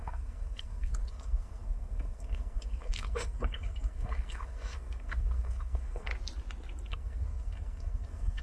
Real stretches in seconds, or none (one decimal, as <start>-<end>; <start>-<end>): 6.1-6.9